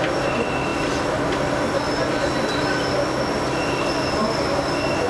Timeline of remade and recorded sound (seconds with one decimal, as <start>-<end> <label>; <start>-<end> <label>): 0.0-5.1 recorded